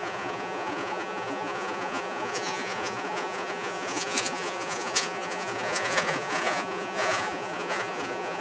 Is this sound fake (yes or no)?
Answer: yes